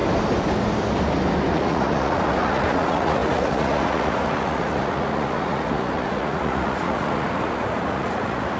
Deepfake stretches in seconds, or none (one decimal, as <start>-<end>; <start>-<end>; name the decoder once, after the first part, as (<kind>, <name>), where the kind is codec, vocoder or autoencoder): 1.5-8.6 (vocoder, Vocos)